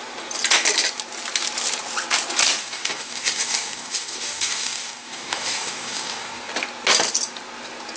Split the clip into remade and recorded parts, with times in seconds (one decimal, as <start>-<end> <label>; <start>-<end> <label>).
0.0-2.6 recorded; 2.6-6.5 remade; 6.5-8.0 recorded